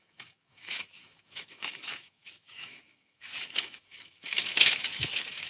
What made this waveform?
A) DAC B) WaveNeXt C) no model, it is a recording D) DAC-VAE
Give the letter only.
D